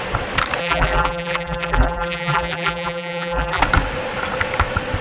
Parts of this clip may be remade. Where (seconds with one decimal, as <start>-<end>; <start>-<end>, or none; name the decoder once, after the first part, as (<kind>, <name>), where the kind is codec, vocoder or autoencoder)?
0.6-3.6 (vocoder, BigVGAN v2)